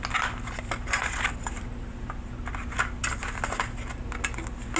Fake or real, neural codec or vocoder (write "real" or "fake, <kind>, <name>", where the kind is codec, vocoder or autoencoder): real